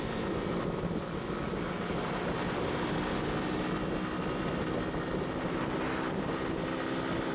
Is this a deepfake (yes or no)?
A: no